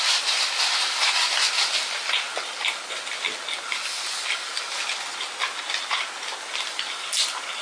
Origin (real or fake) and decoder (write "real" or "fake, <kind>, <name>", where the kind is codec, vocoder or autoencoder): real